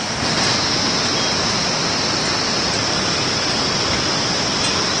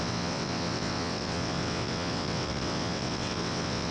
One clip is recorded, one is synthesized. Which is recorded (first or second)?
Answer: first